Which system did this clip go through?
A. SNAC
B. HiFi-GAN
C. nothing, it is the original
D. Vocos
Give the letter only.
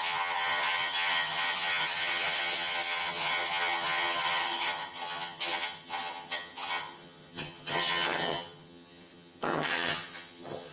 B